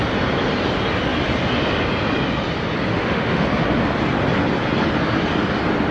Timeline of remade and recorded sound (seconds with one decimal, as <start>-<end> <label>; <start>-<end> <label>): 0.0-2.9 recorded; 2.9-3.5 remade; 3.5-5.9 recorded